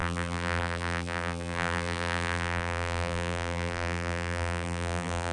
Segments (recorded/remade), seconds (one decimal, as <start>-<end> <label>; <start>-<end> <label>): 0.0-5.3 remade